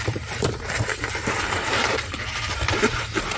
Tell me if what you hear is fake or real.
fake